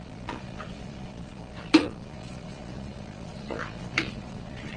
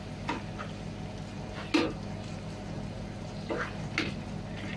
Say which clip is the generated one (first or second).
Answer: first